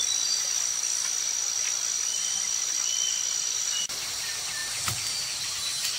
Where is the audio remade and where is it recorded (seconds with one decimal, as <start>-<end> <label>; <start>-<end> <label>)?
0.0-4.6 recorded; 4.6-6.0 remade